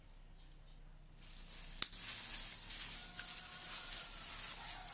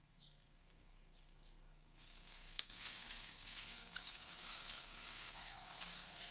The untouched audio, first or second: first